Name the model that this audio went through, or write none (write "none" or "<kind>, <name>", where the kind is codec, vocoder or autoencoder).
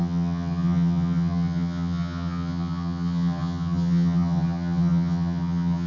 vocoder, HiFi-GAN